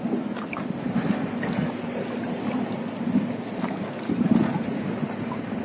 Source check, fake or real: real